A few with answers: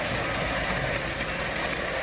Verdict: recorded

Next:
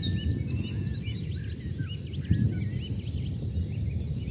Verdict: recorded